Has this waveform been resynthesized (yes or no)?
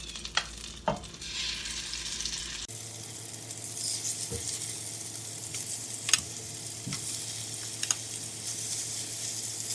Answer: no